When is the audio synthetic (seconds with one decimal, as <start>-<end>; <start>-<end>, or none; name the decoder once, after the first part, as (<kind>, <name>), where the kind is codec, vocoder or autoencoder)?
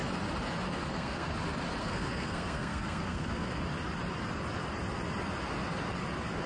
0.9-1.3 (codec, SNAC); 1.8-3.5